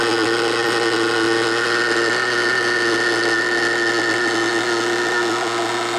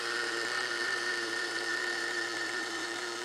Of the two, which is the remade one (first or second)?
second